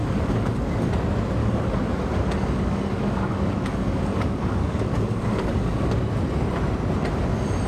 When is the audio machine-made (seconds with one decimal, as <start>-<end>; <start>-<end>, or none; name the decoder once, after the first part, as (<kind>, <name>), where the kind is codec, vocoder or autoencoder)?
0.0-0.9 (codec, DAC); 1.4-6.0